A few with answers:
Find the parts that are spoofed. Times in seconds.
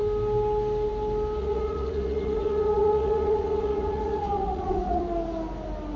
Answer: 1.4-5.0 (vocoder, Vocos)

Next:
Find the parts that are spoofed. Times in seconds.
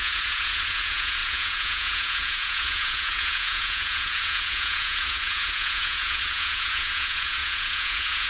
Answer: 0.0-8.3 (vocoder, Vocos)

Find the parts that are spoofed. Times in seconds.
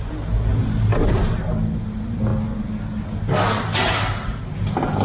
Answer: 0.5-1.4 (vocoder, BigVGAN v2)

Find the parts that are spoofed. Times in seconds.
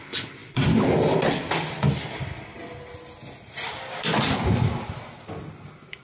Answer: none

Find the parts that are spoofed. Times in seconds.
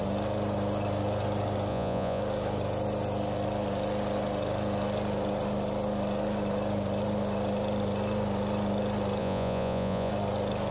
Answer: 1.7-2.2 (vocoder, Vocos); 9.2-10.1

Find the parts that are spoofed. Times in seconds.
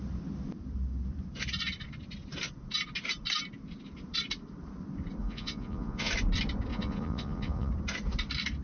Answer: 5.2-6.1 (vocoder, Vocos); 6.7-7.7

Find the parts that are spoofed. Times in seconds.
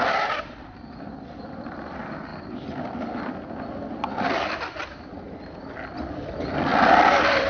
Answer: none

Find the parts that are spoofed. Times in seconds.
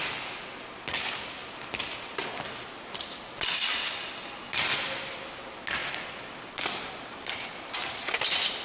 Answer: none